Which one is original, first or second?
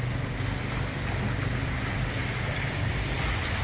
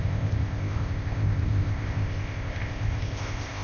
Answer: first